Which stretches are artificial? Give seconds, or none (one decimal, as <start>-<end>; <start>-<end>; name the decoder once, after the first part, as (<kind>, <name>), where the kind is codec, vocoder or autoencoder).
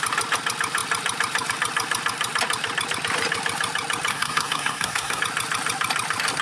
4.1-5.2 (codec, SNAC)